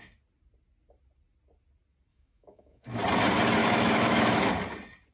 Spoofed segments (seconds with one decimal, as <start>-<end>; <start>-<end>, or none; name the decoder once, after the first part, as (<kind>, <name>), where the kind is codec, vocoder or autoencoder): 2.1-3.0 (autoencoder, DAC-VAE); 3.6-4.5